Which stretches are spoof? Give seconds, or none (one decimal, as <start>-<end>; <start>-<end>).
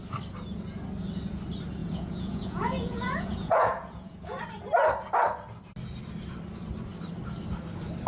1.8-4.4